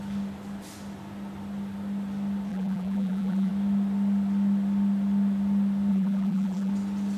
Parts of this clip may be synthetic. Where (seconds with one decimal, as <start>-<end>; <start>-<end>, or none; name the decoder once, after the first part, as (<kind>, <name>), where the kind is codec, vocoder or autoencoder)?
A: 2.5-3.5 (vocoder, BigVGAN v2); 5.9-6.7